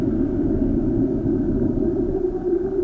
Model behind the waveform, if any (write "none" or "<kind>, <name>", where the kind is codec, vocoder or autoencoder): none